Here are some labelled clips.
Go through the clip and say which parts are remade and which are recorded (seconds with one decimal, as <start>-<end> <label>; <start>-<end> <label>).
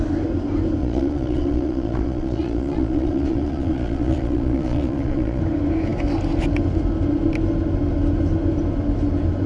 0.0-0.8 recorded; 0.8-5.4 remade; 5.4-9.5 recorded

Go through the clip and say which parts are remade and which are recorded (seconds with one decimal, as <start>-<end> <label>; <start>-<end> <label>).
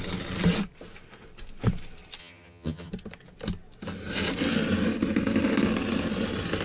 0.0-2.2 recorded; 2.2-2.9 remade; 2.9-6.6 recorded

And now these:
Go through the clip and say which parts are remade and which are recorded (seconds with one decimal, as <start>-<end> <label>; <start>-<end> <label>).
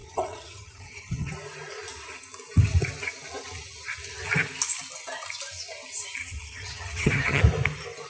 0.0-1.3 remade; 1.3-6.2 recorded; 6.2-7.4 remade; 7.4-8.1 recorded